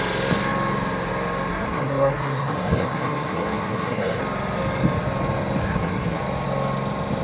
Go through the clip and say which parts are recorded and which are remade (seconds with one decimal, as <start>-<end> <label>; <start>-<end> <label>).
0.0-1.5 recorded; 1.5-4.2 remade; 4.2-5.6 recorded; 5.6-6.2 remade; 6.2-7.2 recorded

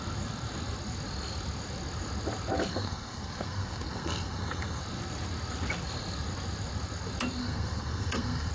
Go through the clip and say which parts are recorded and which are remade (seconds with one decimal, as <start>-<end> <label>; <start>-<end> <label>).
0.0-2.7 recorded; 2.7-4.8 remade; 4.8-7.4 recorded; 7.4-8.5 remade